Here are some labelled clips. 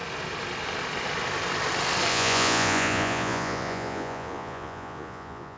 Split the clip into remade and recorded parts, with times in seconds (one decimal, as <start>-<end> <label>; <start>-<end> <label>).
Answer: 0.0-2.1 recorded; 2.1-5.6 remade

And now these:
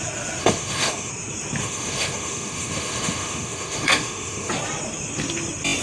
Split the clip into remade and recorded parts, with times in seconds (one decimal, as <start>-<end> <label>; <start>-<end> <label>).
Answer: 0.0-0.4 recorded; 0.4-1.1 remade; 1.1-1.6 recorded; 1.6-4.5 remade; 4.5-5.8 recorded

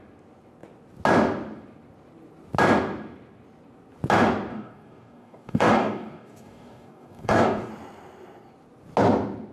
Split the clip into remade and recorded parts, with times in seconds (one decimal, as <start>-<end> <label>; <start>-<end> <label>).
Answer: 0.0-4.5 recorded; 4.5-7.7 remade; 7.7-9.5 recorded

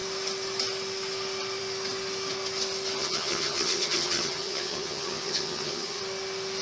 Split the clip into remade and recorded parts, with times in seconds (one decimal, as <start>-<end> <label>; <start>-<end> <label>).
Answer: 0.0-3.0 recorded; 3.0-6.0 remade; 6.0-6.6 recorded